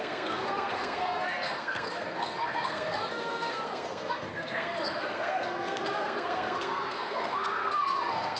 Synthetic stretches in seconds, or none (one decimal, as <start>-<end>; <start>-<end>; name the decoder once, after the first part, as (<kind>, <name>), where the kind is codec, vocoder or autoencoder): 0.0-8.4 (codec, SNAC)